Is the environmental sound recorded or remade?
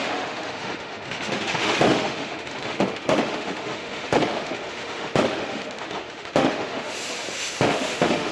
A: remade